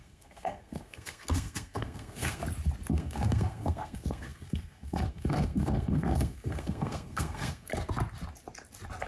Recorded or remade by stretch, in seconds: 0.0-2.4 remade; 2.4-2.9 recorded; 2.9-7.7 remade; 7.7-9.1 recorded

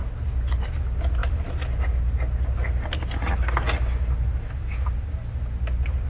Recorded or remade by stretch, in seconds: 0.0-6.1 recorded

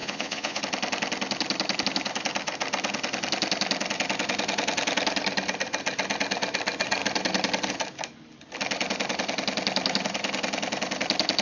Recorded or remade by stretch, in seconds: 0.0-0.6 remade; 0.6-11.4 recorded